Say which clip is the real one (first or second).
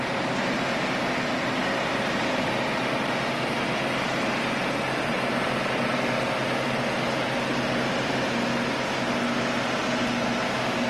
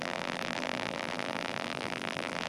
first